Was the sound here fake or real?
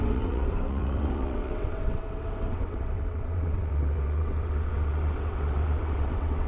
fake